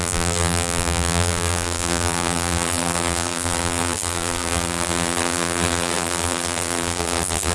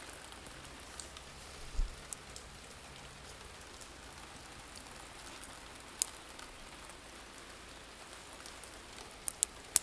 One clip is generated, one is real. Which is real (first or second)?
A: second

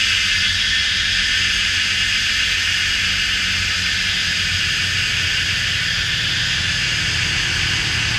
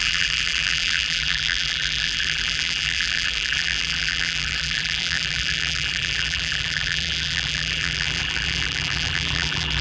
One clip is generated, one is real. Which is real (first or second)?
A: first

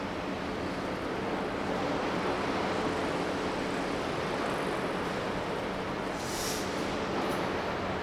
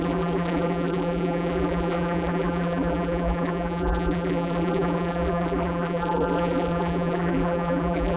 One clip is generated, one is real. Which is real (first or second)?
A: first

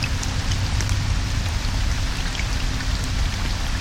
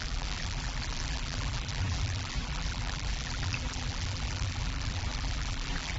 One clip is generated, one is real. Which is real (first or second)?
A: first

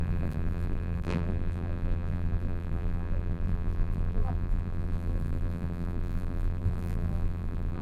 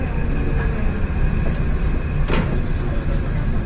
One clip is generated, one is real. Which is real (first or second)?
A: second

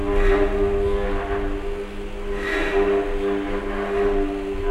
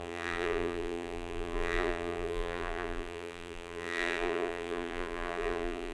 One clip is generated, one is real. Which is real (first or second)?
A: first